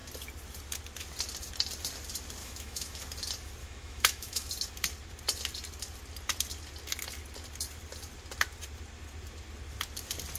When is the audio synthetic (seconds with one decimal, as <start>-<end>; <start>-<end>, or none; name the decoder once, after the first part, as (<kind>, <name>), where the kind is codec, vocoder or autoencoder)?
2.4-3.0 (autoencoder, DAC-VAE); 3.6-4.5